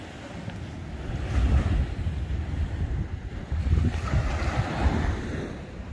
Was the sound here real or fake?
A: real